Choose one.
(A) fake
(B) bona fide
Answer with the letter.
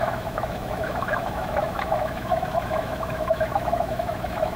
A